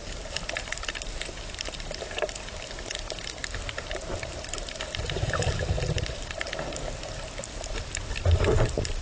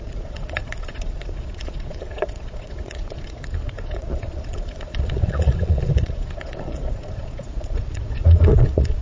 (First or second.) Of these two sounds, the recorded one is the first